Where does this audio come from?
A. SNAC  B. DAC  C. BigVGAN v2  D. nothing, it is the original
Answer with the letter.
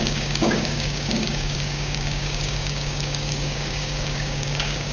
B